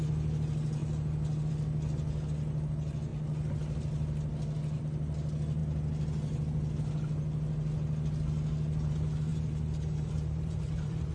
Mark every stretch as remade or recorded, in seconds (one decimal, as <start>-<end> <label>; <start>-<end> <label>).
0.0-9.3 recorded; 9.3-11.1 remade